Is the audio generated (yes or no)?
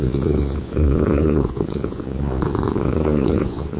yes